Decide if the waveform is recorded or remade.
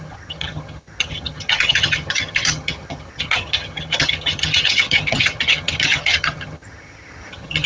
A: remade